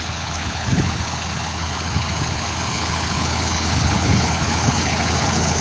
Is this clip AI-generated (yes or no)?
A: yes